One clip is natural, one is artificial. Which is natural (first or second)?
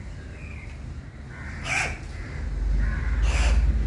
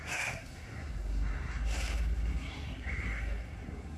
first